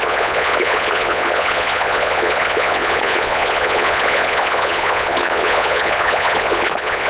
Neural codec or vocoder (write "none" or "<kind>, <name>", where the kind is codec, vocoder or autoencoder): vocoder, Vocos